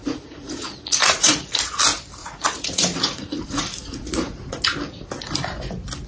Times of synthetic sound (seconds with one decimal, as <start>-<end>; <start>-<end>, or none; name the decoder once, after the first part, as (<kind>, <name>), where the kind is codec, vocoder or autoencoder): 0.0-1.8 (vocoder, Vocos); 2.2-4.6